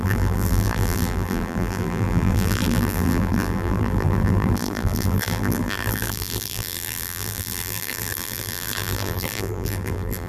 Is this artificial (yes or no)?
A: yes